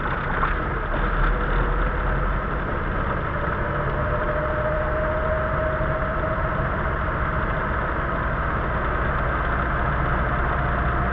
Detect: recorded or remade recorded